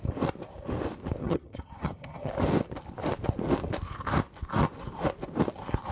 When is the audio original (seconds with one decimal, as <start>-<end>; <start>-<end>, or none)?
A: 0.0-1.2; 2.3-5.9